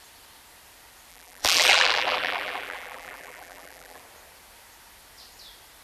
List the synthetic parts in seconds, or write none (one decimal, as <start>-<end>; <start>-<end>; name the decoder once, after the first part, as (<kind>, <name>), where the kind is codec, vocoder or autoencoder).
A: 1.1-4.0 (vocoder, BigVGAN v2)